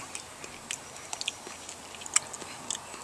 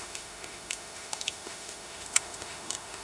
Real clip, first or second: first